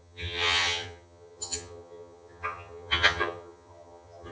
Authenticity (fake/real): fake